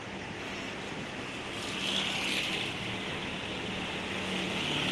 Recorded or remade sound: recorded